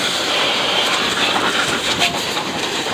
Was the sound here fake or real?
fake